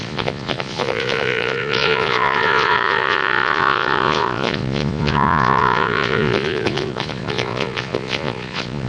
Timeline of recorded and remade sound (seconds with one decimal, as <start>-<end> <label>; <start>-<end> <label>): 0.0-8.9 remade